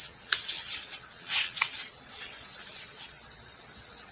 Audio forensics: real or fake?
fake